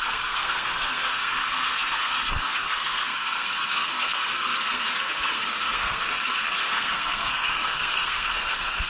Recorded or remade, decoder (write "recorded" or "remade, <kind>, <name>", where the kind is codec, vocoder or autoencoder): remade, codec, SNAC